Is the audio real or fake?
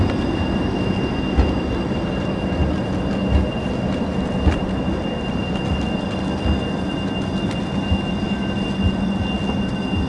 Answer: real